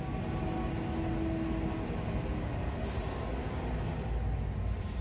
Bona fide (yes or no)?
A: yes